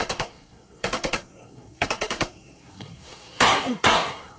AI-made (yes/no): yes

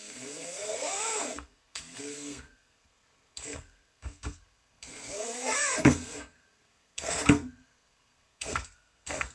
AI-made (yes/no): yes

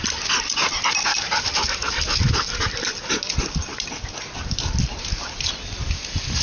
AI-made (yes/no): no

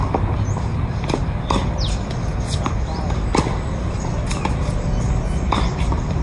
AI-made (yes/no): no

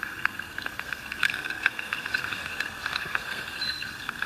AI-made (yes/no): yes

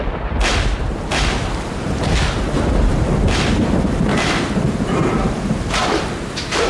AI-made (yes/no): no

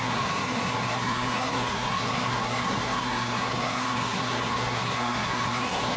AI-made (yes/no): yes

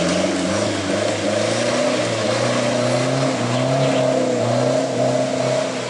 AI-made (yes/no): no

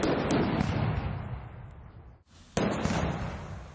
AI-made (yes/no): no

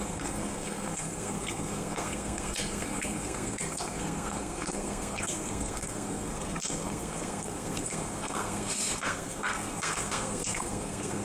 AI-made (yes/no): yes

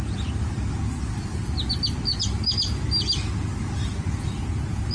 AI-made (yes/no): no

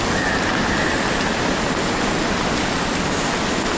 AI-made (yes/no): no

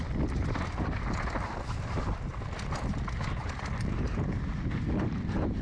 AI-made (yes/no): no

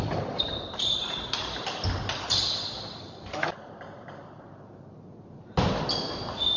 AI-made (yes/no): no